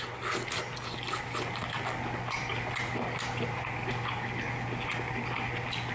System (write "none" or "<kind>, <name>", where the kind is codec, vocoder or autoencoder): none